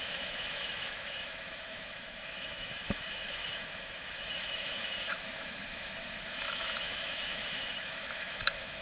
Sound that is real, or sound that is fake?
fake